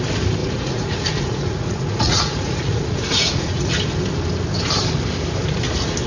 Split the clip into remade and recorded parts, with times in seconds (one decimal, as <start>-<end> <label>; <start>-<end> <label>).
0.0-0.4 recorded; 0.4-3.7 remade; 3.7-6.1 recorded